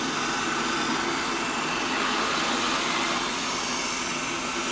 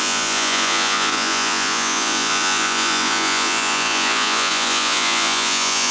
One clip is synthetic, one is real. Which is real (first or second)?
first